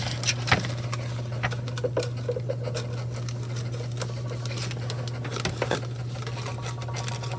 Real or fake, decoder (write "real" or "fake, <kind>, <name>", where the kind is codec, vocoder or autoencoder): real